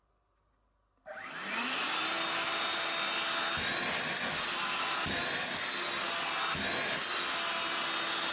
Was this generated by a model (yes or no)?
no